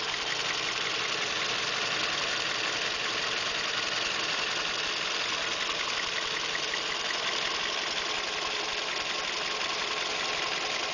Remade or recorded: recorded